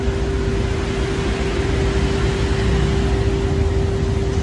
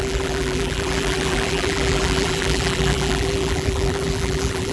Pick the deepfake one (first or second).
second